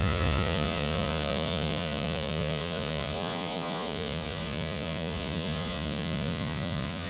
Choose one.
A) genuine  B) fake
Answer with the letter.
B